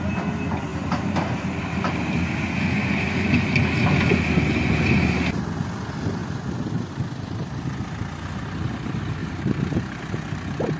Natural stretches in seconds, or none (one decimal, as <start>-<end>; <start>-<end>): 0.0-0.7; 1.9-9.2; 10.0-10.8